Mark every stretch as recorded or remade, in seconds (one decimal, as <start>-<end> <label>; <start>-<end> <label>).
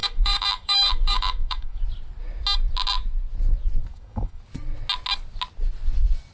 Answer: 0.0-1.8 remade; 1.8-3.9 recorded; 3.9-4.4 remade; 4.4-6.3 recorded